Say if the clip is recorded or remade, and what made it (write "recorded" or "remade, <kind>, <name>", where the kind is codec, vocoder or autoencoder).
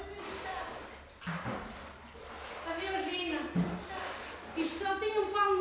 recorded